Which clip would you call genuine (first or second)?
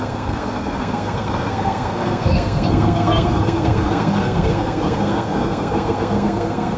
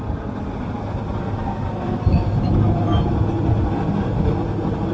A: second